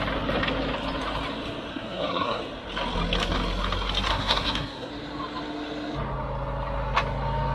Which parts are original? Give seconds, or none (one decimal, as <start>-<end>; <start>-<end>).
0.0-1.7; 2.4-4.1; 4.9-7.5